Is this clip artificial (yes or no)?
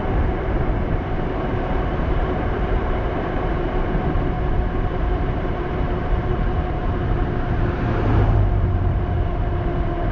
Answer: yes